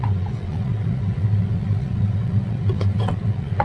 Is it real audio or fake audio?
fake